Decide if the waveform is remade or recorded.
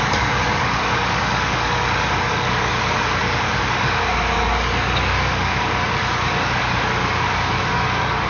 remade